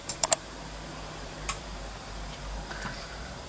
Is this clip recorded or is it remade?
remade